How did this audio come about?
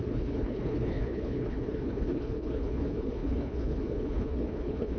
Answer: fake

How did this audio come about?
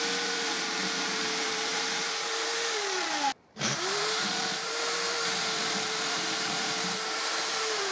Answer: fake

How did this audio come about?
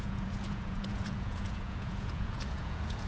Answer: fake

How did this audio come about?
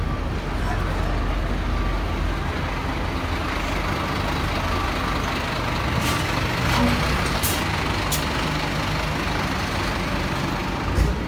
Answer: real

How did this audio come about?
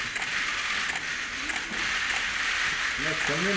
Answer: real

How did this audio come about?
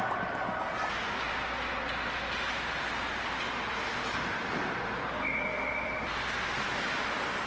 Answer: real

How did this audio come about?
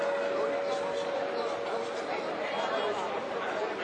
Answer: real